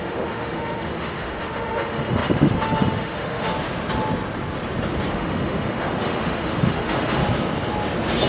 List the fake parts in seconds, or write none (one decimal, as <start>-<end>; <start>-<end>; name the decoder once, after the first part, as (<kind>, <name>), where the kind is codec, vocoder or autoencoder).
0.0-3.5 (autoencoder, DAC-VAE); 5.1-7.2